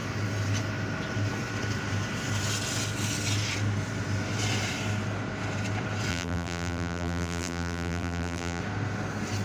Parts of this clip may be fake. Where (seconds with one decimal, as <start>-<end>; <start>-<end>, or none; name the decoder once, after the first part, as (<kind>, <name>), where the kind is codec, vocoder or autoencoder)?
6.1-8.6 (vocoder, BigVGAN v2)